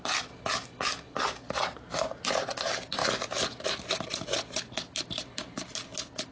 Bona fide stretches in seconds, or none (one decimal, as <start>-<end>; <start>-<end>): 0.0-6.3